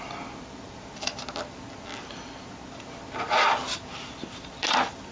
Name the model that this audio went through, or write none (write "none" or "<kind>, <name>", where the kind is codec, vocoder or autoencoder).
none